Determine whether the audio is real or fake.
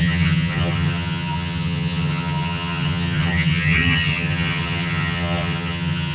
fake